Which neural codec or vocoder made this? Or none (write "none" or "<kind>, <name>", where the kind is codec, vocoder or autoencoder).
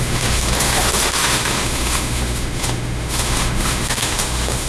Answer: autoencoder, DAC-VAE